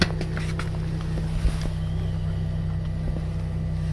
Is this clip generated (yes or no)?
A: no